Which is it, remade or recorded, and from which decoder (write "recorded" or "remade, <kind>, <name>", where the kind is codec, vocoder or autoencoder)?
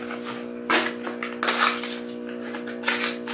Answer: recorded